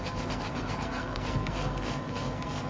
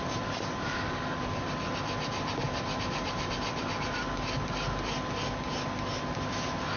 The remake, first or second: first